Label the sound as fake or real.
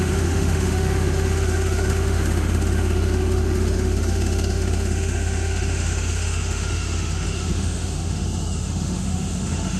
fake